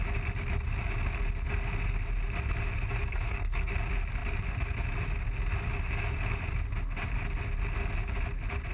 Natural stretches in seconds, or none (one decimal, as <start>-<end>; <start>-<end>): 0.0-3.1; 3.7-8.7